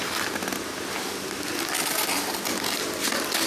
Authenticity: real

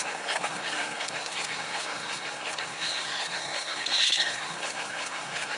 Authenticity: fake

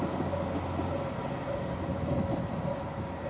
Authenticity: real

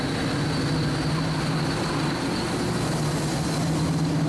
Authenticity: real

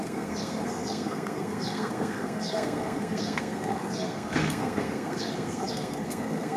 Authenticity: fake